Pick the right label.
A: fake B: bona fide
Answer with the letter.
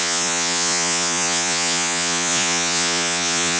A